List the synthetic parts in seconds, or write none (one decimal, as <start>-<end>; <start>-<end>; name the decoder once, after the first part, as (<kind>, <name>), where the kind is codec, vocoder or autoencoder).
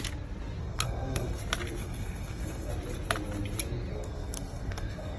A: 0.6-1.4 (codec, SNAC); 1.8-2.7; 3.9-5.2